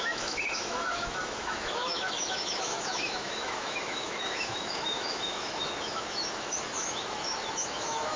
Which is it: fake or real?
fake